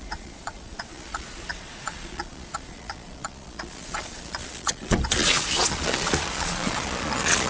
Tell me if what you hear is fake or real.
fake